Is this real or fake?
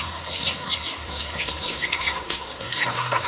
fake